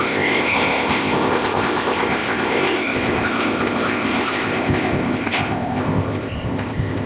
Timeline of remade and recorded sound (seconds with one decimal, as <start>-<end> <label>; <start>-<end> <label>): 0.0-7.1 remade